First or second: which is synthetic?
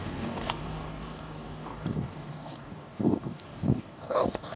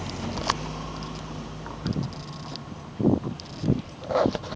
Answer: first